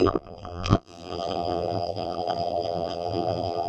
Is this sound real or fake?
fake